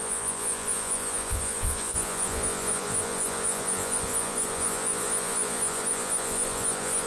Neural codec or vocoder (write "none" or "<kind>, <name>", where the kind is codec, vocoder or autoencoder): vocoder, Vocos